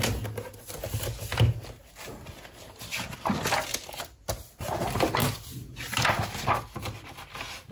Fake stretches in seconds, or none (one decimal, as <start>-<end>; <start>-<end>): none